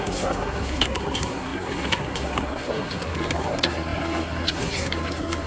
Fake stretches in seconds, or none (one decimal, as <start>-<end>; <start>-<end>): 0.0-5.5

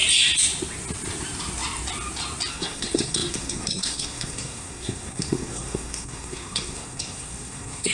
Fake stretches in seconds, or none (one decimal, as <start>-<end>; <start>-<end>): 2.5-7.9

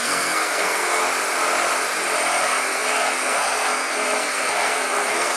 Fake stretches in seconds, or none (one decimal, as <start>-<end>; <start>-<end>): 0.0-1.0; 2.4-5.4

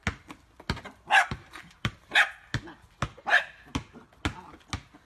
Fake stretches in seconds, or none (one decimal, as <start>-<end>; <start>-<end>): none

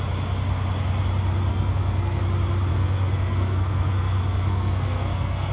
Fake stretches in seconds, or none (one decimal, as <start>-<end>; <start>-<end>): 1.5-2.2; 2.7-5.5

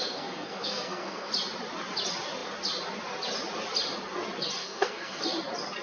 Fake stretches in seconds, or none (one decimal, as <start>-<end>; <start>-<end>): 0.0-1.3; 4.6-5.2